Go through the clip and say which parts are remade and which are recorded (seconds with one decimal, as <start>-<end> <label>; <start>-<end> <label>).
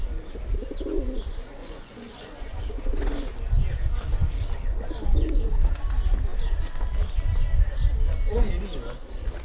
0.0-1.6 recorded; 1.6-2.6 remade; 2.6-9.4 recorded